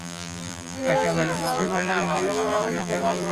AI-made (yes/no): yes